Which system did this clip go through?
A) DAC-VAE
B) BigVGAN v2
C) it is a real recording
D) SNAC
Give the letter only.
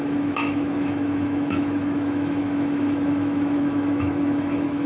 A